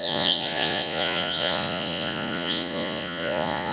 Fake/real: fake